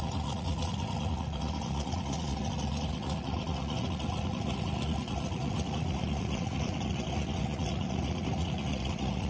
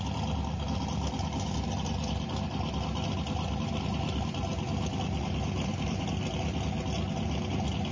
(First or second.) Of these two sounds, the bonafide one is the second